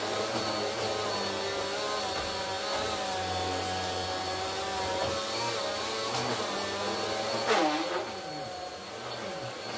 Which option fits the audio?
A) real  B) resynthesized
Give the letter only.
A